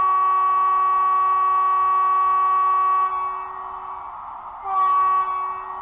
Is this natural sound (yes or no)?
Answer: yes